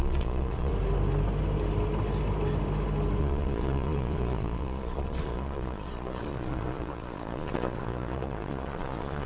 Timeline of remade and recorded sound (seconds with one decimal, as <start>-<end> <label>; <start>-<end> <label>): 0.0-0.7 remade; 0.7-3.2 recorded; 3.2-9.3 remade